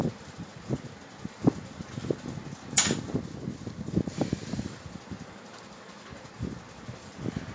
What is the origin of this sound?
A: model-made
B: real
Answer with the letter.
B